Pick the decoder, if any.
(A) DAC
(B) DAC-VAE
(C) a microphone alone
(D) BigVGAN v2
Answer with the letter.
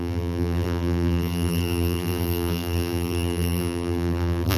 D